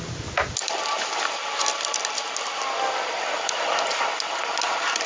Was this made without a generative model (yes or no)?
yes